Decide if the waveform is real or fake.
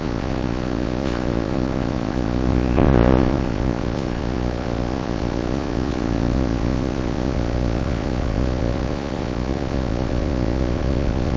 fake